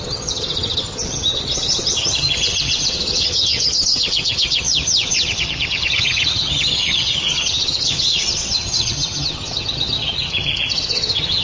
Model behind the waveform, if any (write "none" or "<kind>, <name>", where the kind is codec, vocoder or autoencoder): vocoder, HiFi-GAN